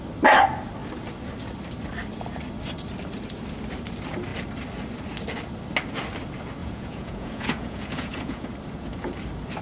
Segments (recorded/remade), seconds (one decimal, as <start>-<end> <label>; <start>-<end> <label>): 0.0-6.6 recorded; 6.6-8.5 remade; 8.5-9.6 recorded